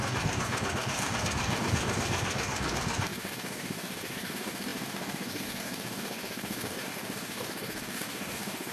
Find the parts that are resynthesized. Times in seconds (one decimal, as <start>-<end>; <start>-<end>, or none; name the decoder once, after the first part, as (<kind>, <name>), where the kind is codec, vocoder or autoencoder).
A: 0.0-8.7 (codec, DAC)